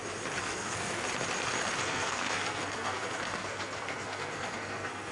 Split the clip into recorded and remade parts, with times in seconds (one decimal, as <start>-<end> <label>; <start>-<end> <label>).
0.0-0.4 recorded; 0.4-1.0 remade; 1.0-1.8 recorded; 1.8-5.1 remade